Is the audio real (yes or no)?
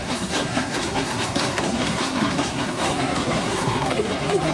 no